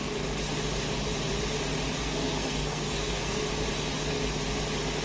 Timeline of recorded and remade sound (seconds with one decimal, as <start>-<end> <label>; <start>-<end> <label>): 0.0-2.0 recorded; 2.0-3.4 remade; 3.4-5.0 recorded